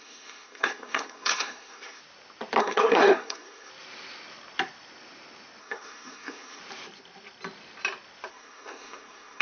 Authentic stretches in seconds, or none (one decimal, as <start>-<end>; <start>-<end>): 2.0-2.6; 3.7-5.6; 6.6-8.3